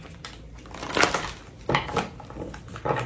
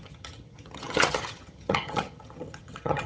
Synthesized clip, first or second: second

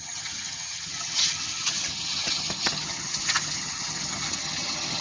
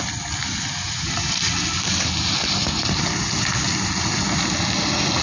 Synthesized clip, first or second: first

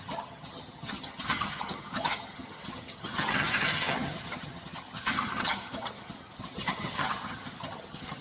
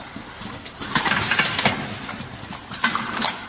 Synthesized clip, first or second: first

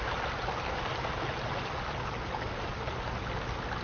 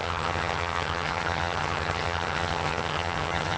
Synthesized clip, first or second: second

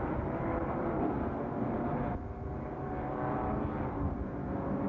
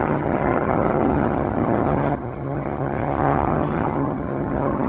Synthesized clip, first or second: second